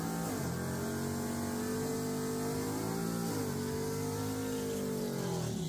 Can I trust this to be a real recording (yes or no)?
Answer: yes